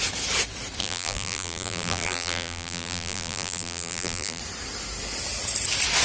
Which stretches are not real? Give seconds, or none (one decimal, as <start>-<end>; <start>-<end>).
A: 0.8-4.4

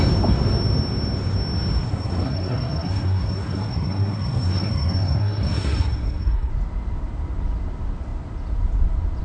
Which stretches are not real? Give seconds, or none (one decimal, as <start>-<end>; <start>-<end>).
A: 1.8-6.5

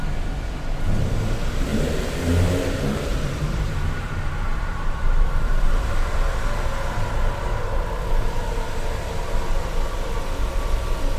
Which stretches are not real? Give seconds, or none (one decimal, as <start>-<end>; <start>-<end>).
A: 1.7-5.9

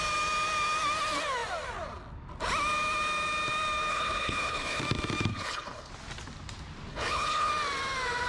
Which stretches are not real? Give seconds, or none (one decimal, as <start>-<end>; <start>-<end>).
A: 3.9-4.8; 5.3-5.9; 6.9-7.5